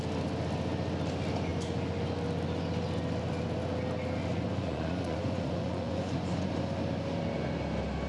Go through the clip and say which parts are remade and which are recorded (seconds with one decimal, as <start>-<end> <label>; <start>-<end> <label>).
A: 0.0-4.3 recorded; 4.3-6.5 remade; 6.5-8.1 recorded